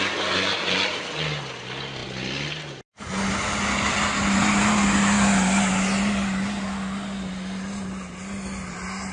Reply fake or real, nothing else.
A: real